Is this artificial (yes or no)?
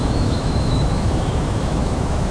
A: yes